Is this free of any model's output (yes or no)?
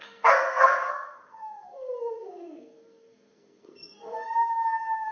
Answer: no